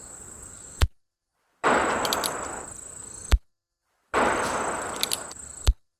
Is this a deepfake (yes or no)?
yes